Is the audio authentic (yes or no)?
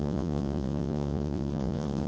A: no